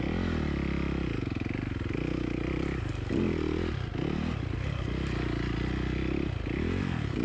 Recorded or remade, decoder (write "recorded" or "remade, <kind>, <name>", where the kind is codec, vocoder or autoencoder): recorded